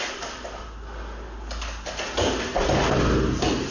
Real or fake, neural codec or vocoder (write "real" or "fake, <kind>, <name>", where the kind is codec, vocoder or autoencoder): real